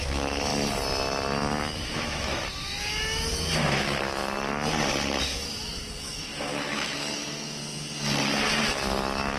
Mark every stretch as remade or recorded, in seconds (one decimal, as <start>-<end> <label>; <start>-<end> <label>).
0.0-0.5 remade; 0.5-1.6 recorded; 1.6-4.2 remade; 4.2-5.2 recorded; 5.2-7.6 remade; 7.6-8.6 recorded; 8.6-9.4 remade